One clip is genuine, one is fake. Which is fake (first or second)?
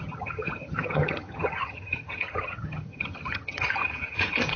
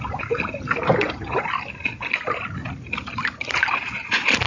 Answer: first